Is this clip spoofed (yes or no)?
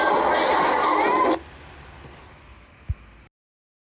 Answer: no